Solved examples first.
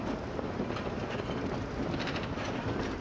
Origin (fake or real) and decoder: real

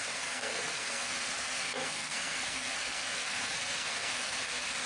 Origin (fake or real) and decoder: fake, codec, SNAC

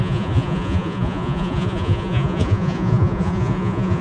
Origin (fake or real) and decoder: fake, vocoder, Vocos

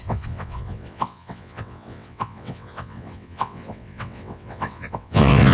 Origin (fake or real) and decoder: fake, vocoder, WaveNeXt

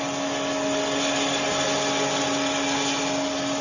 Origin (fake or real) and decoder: real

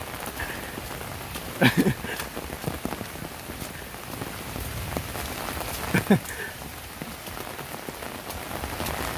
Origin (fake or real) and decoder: real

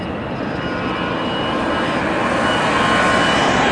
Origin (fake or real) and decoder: real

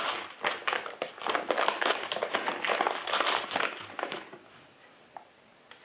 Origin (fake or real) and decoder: real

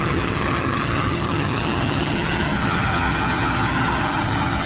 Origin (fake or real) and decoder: fake, vocoder, HiFi-GAN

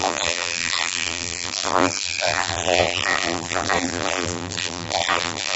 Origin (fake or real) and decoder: fake, vocoder, BigVGAN v2